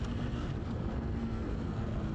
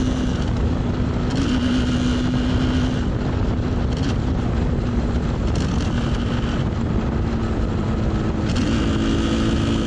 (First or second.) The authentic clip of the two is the second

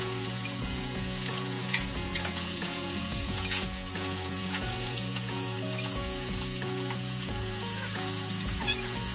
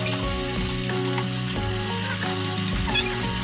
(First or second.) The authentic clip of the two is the second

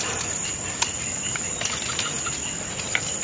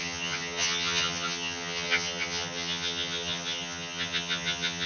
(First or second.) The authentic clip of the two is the first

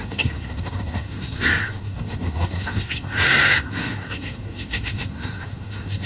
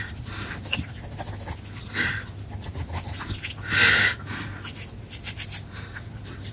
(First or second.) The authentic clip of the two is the second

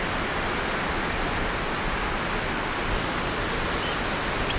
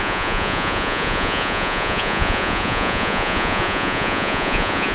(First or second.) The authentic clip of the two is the first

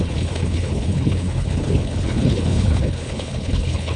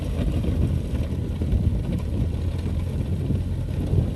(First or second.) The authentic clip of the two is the second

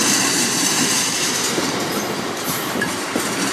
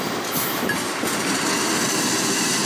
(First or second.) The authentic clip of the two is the second